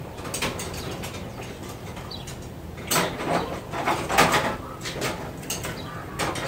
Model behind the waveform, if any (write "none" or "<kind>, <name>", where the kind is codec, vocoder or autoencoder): none